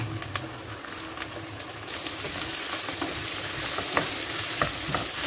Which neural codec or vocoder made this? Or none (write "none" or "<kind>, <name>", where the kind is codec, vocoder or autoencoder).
none